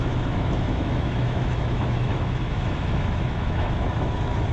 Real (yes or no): no